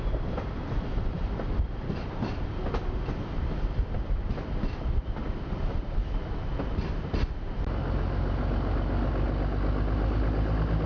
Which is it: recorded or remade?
recorded